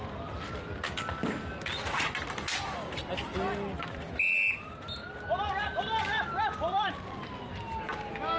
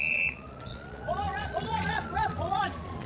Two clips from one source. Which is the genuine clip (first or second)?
first